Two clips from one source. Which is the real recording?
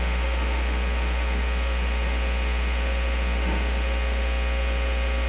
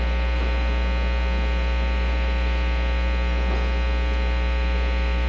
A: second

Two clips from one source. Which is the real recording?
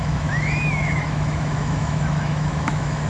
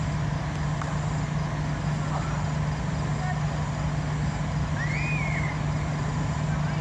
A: second